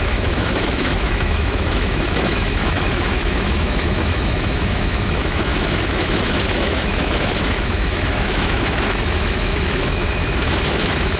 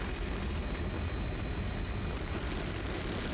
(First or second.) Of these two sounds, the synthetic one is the first